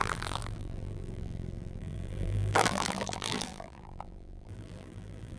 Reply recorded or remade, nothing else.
remade